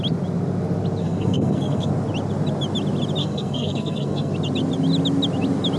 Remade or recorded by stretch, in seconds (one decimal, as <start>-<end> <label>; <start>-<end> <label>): 0.0-1.0 recorded; 1.0-1.9 remade; 1.9-3.2 recorded; 3.2-4.3 remade; 4.3-5.8 recorded